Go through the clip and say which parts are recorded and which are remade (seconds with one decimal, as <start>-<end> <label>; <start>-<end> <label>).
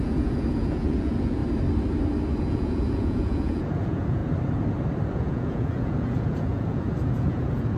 0.0-1.4 remade; 1.4-2.4 recorded; 2.4-4.2 remade; 4.2-5.1 recorded; 5.1-7.8 remade